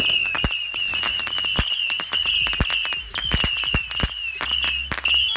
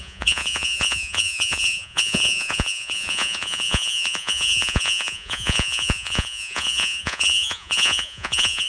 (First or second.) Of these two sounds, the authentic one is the first